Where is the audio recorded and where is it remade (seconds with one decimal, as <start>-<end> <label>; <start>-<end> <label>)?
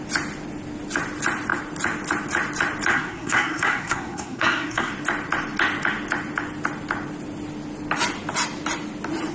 0.0-2.9 recorded; 2.9-4.9 remade; 4.9-9.3 recorded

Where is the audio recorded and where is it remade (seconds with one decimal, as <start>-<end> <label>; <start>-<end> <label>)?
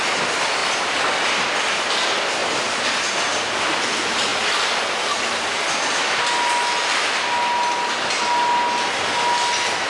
0.0-2.4 recorded; 2.4-3.0 remade; 3.0-9.9 recorded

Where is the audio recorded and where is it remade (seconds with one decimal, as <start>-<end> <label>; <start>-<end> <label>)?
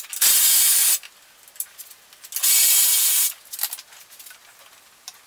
0.0-5.3 recorded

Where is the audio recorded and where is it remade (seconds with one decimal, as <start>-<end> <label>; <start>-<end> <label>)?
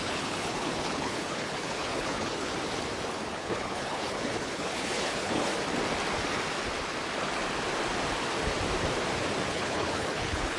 0.0-2.5 remade; 2.5-3.3 recorded; 3.3-5.5 remade; 5.5-9.5 recorded; 9.5-10.6 remade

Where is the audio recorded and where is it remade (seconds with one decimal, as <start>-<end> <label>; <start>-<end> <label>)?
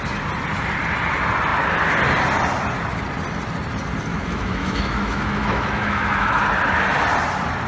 0.0-4.1 recorded; 4.1-6.4 remade; 6.4-7.7 recorded